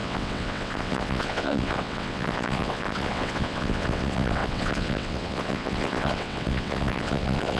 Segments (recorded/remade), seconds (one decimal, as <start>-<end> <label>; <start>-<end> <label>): 0.0-7.6 remade

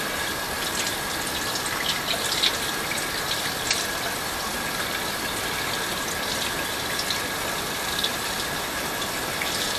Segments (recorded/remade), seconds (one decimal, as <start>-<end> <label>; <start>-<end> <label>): 0.0-9.8 recorded